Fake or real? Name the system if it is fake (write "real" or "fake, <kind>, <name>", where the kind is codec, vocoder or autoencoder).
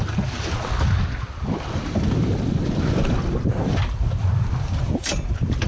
real